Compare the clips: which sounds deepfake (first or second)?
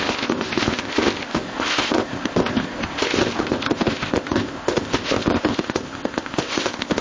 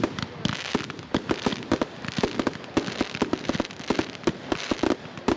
first